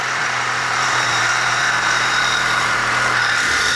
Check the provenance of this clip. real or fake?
fake